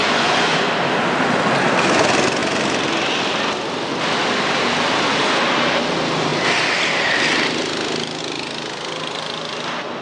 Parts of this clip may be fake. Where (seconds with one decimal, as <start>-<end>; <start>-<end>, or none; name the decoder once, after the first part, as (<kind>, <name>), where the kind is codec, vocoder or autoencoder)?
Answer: 0.0-0.6 (vocoder, Vocos)